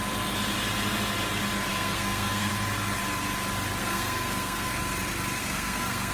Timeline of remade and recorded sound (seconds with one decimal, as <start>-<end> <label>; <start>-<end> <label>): 0.0-1.7 recorded; 1.7-2.5 remade; 2.5-3.8 recorded; 3.8-4.7 remade; 4.7-5.4 recorded; 5.4-6.1 remade

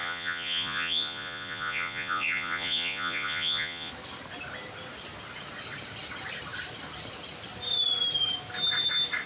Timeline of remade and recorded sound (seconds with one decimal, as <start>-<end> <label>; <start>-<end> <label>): 0.0-3.9 remade; 3.9-9.3 recorded

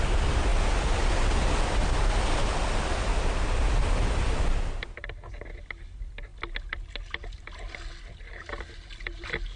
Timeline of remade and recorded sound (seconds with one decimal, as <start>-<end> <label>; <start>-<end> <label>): 0.0-9.6 recorded

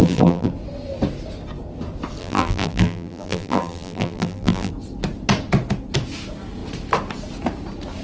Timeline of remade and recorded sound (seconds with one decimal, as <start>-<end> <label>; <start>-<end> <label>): 0.0-0.5 remade; 0.5-2.2 recorded; 2.2-4.7 remade; 4.7-8.0 recorded

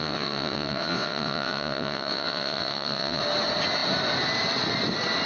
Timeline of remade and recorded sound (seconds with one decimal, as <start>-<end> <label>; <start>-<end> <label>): 0.0-3.2 remade; 3.2-5.3 recorded

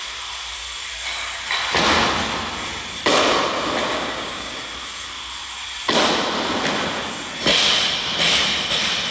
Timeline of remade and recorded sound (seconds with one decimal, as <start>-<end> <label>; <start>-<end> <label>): 0.0-3.9 recorded; 3.9-4.6 remade; 4.6-9.1 recorded